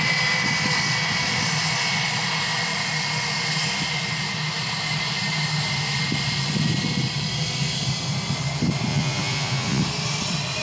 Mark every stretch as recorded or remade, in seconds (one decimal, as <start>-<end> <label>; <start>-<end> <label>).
0.0-8.9 recorded; 8.9-9.8 remade; 9.8-10.6 recorded